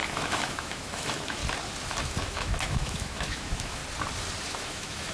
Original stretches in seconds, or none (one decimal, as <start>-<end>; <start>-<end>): 1.4-2.0; 3.8-4.5